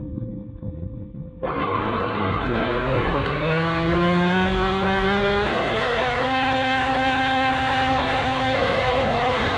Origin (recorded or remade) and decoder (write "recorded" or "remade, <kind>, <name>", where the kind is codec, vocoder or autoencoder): remade, codec, SNAC